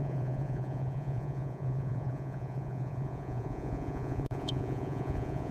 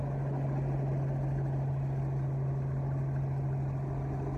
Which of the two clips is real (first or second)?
second